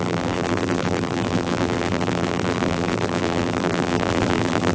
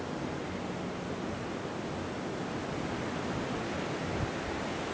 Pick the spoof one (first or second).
first